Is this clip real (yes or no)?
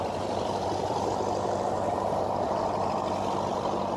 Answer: yes